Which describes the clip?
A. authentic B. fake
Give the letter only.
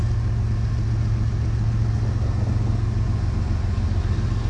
A